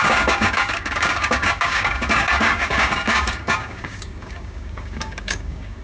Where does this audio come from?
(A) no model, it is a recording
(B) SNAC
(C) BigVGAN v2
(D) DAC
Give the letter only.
D